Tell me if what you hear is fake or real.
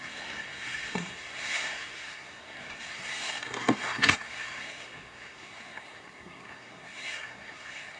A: fake